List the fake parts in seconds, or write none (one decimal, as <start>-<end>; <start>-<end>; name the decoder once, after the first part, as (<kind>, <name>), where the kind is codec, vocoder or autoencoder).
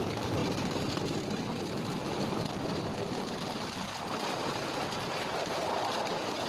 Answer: 0.0-0.4 (vocoder, BigVGAN v2); 1.6-2.9; 4.0-6.5